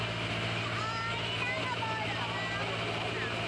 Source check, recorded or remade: recorded